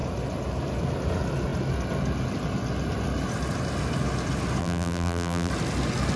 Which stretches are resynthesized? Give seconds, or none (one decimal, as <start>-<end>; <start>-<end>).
4.6-5.5